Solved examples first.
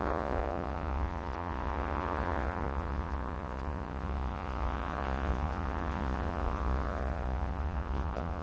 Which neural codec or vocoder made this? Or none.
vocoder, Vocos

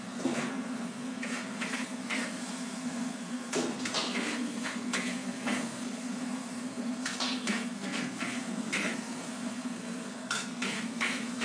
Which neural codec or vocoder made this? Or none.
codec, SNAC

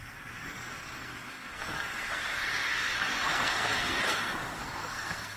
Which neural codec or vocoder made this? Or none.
codec, SNAC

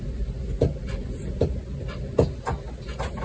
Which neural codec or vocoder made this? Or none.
none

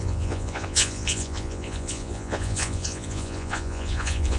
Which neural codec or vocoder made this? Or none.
vocoder, Vocos